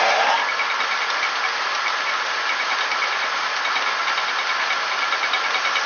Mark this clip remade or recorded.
recorded